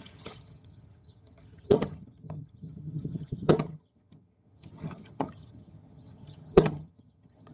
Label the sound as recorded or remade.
remade